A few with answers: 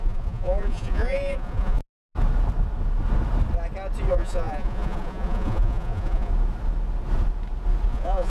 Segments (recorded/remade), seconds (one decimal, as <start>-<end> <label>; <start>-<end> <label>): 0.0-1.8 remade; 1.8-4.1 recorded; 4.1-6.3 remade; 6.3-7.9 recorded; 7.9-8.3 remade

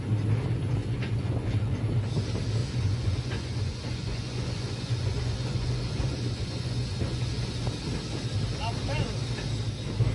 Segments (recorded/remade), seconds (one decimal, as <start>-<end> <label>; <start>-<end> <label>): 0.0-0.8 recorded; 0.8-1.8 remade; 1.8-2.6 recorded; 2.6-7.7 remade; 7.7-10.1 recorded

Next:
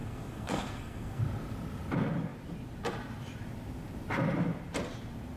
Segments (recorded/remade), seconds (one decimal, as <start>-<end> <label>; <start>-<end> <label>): 0.0-1.2 remade; 1.2-5.4 recorded

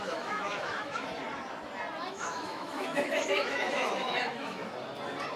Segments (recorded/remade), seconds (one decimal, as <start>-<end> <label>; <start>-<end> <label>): 0.0-1.1 remade; 1.1-2.1 recorded; 2.1-4.6 remade; 4.6-5.4 recorded